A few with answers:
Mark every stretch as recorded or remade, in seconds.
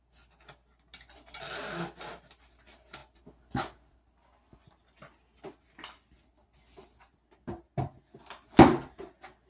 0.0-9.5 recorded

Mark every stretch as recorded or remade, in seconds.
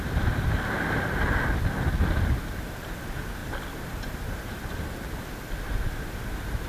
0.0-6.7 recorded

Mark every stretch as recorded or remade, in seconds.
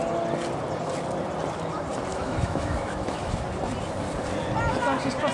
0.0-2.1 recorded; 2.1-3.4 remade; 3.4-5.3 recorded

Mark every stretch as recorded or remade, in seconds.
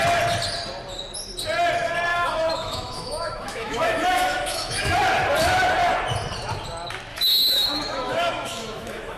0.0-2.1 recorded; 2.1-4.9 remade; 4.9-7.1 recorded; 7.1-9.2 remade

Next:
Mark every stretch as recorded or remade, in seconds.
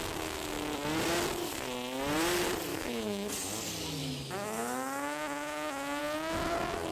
0.0-2.7 recorded; 2.7-3.3 remade; 3.3-4.0 recorded; 4.0-6.0 remade; 6.0-6.9 recorded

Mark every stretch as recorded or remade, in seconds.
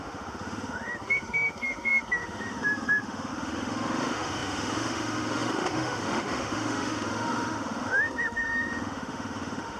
0.0-9.8 remade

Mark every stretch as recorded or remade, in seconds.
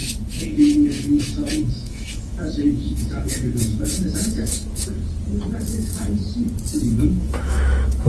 0.0-5.0 remade; 5.0-5.7 recorded; 5.7-6.2 remade; 6.2-6.9 recorded; 6.9-8.1 remade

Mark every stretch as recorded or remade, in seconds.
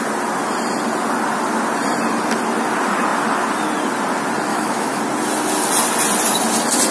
0.0-4.5 recorded; 4.5-5.0 remade; 5.0-6.9 recorded